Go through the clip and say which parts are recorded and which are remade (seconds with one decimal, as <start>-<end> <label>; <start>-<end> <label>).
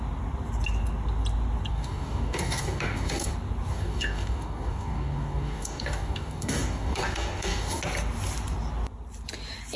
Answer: 0.0-1.7 recorded; 1.7-3.3 remade; 3.3-3.7 recorded; 3.7-7.8 remade; 7.8-9.8 recorded